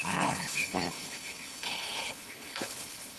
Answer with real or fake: fake